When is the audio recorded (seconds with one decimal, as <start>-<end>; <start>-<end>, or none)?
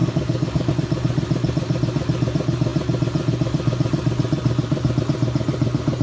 0.7-6.0